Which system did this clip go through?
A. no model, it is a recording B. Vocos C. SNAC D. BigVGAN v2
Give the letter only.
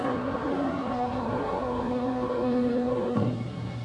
C